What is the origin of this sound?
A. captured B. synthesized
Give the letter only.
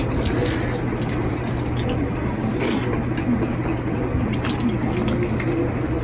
A